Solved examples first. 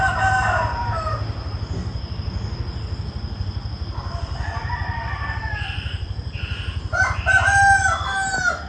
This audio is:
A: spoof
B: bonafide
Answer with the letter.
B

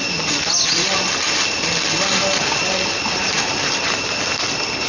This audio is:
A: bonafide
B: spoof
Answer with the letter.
A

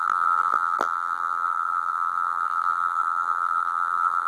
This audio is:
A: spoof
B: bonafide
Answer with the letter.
A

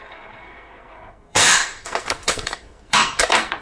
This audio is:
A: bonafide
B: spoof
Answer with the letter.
B